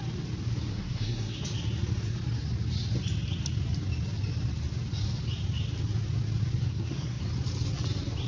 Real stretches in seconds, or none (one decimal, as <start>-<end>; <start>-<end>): 0.0-0.7; 1.4-6.7; 7.2-8.3